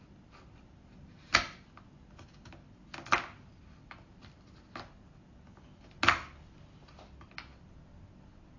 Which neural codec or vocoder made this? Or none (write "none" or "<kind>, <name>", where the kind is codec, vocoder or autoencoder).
none